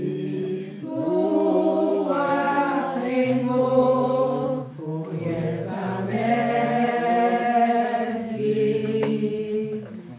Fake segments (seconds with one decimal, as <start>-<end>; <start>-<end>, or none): 0.0-1.3; 1.9-10.2